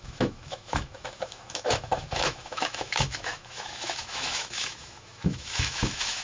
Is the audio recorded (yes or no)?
no